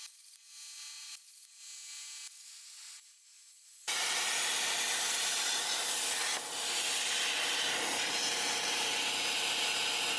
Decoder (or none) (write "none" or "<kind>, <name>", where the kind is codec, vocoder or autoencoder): none